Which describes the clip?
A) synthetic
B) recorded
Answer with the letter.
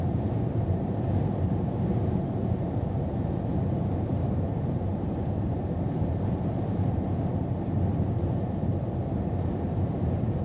A